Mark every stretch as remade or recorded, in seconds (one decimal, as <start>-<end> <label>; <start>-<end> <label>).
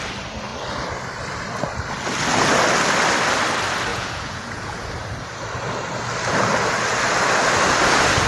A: 0.0-3.9 recorded; 3.9-4.9 remade; 4.9-8.3 recorded